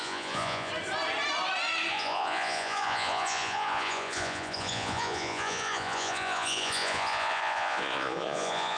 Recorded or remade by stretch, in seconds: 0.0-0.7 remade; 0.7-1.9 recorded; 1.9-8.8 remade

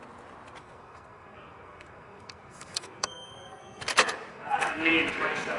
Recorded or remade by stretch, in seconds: 0.0-0.6 recorded; 0.6-3.8 remade; 3.8-4.3 recorded; 4.3-4.9 remade; 4.9-5.6 recorded

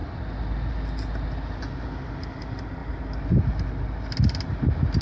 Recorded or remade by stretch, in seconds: 0.0-5.0 recorded

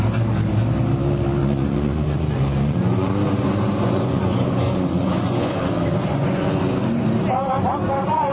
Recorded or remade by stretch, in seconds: 0.0-1.4 recorded; 1.4-5.6 remade; 5.6-6.1 recorded; 6.1-6.7 remade; 6.7-8.3 recorded

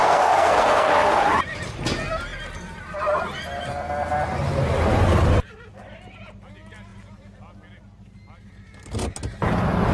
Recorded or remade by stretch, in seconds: 0.0-0.9 remade; 0.9-9.9 recorded

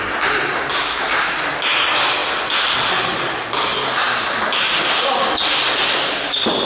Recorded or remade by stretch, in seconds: 0.0-6.6 recorded

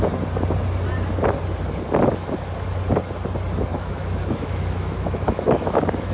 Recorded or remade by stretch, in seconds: 0.0-3.7 recorded; 3.7-6.1 remade

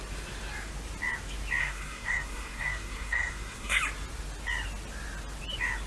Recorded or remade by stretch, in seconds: 0.0-1.6 recorded; 1.6-3.8 remade; 3.8-5.9 recorded